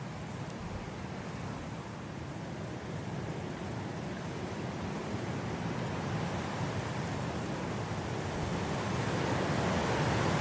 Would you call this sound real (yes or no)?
yes